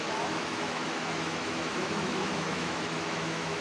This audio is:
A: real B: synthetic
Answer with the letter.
B